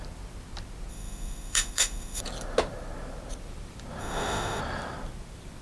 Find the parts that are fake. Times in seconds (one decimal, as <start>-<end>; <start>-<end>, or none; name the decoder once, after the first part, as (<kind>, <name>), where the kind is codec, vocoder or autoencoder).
0.9-2.2 (autoencoder, DAC-VAE); 4.0-4.6